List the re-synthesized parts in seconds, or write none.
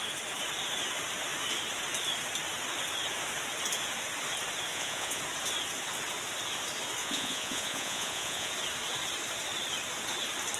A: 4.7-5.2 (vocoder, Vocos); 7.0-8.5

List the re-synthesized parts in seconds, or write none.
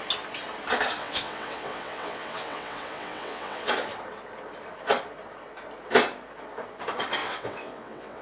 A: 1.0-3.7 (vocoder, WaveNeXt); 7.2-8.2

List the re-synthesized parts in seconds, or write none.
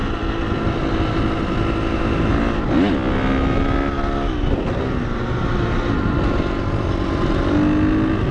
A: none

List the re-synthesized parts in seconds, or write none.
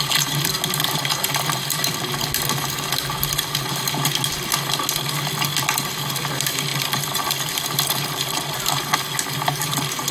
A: none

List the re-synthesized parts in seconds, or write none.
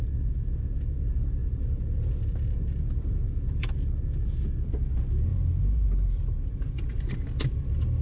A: 1.4-2.2 (vocoder, BigVGAN v2); 5.3-7.0